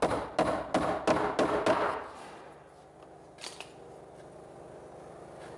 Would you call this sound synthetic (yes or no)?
no